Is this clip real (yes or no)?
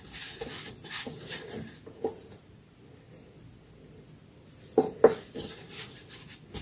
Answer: yes